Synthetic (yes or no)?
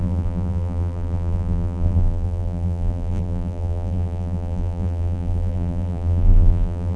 yes